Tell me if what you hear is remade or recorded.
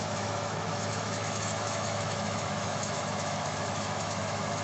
remade